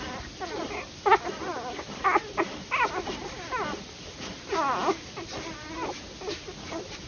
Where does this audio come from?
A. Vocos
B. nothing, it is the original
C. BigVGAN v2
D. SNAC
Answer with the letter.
B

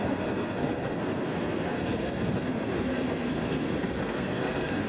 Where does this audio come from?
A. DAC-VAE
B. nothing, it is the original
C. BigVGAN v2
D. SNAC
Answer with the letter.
D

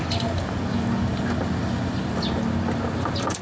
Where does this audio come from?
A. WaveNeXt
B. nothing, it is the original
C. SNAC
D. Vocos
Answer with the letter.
B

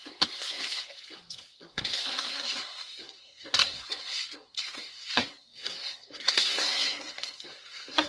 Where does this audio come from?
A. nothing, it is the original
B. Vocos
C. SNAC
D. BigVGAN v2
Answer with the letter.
C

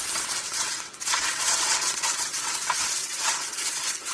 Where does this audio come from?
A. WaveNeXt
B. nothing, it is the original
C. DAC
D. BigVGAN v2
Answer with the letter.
A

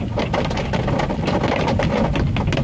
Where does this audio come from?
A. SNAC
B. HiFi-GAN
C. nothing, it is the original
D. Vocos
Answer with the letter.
C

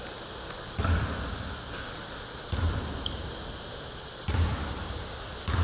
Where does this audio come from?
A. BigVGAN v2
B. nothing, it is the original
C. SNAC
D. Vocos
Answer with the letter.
B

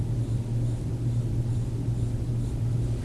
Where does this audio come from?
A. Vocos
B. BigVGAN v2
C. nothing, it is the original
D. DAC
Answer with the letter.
C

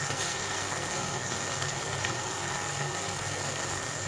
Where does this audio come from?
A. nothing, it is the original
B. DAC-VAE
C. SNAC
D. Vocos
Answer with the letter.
C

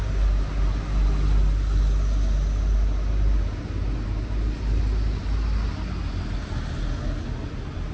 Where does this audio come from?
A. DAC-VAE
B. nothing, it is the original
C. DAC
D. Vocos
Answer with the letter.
B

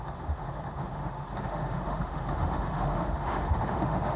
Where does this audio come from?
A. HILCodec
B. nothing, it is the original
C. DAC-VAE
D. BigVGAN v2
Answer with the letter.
C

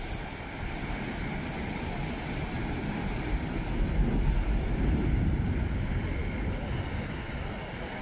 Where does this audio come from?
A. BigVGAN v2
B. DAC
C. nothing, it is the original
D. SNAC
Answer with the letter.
C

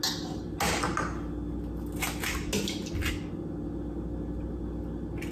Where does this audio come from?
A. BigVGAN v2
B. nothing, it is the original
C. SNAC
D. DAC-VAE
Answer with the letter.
B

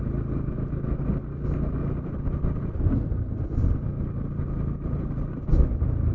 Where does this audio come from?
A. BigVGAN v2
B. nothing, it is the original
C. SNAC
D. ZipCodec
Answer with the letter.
B